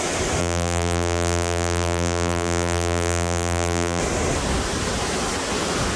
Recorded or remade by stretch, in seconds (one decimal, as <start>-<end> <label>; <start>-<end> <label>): 0.0-0.4 recorded; 0.4-4.0 remade; 4.0-6.0 recorded